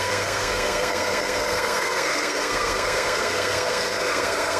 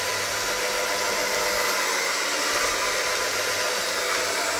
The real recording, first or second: second